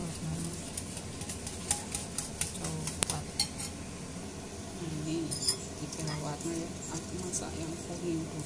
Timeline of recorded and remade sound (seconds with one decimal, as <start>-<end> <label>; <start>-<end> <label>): 0.0-8.5 recorded